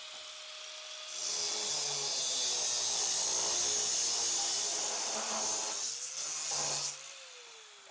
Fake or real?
real